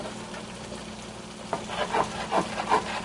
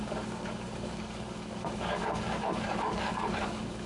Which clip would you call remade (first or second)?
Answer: second